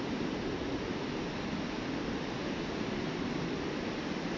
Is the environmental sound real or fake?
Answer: real